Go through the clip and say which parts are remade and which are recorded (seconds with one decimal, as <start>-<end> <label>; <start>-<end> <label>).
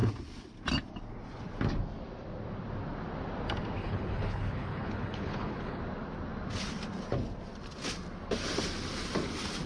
0.0-3.8 recorded; 3.8-5.8 remade; 5.8-9.7 recorded